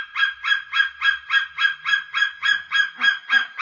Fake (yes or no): no